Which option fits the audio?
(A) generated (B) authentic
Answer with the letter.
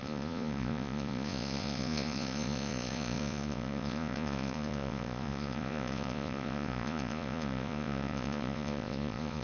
A